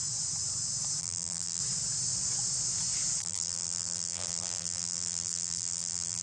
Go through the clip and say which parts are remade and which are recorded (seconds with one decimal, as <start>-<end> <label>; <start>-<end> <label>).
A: 0.0-1.0 recorded; 1.0-1.6 remade; 1.6-3.2 recorded; 3.2-6.2 remade

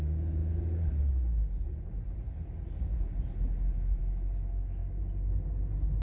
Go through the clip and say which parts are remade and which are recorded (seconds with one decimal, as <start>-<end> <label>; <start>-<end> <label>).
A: 0.0-6.0 recorded

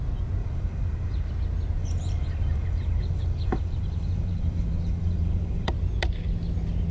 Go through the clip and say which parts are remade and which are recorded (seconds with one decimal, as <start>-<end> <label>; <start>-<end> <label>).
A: 0.0-0.4 recorded; 0.4-1.3 remade; 1.3-1.8 recorded; 1.8-5.7 remade; 5.7-6.9 recorded